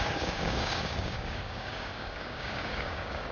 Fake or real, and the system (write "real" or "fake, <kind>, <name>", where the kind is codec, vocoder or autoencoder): fake, codec, DAC